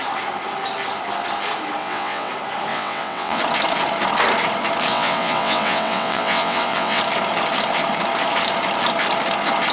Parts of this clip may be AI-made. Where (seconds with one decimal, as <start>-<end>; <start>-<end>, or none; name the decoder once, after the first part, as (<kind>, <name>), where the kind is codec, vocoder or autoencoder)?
1.8-2.3 (vocoder, WaveNeXt); 2.7-3.4; 4.9-7.0